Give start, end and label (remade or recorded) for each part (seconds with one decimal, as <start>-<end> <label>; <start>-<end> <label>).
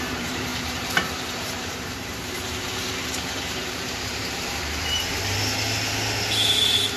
0.0-5.1 remade; 5.1-6.6 recorded; 6.6-7.0 remade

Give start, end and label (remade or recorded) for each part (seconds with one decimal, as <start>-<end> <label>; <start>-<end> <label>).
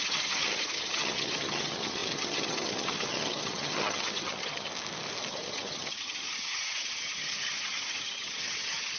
0.0-4.7 remade; 4.7-5.3 recorded; 5.3-9.0 remade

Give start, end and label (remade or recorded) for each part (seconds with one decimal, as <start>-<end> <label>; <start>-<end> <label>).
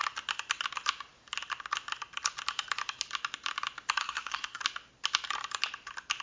0.0-4.0 recorded; 4.0-4.6 remade; 4.6-6.2 recorded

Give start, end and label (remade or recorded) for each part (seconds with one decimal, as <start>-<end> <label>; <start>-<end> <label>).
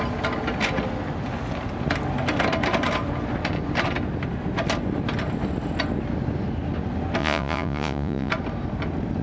0.0-7.2 recorded; 7.2-8.3 remade; 8.3-9.2 recorded